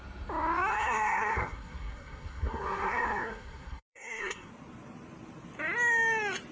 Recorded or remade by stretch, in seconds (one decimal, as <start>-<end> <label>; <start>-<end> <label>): 0.0-0.7 recorded; 0.7-4.5 remade; 4.5-6.5 recorded